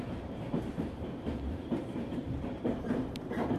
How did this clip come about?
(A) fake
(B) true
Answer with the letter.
A